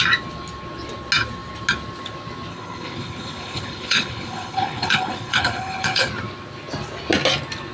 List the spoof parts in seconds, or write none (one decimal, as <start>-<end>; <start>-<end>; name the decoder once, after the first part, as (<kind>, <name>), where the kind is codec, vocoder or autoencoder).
2.5-6.1 (codec, HILCodec)